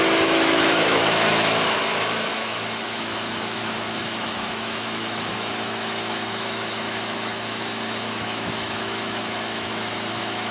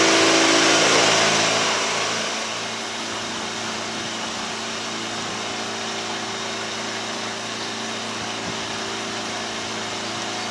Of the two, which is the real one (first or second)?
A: second